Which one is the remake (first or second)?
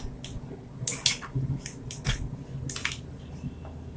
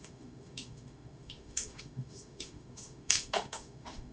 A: second